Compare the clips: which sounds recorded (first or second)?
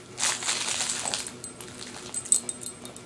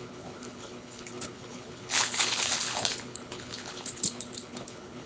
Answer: first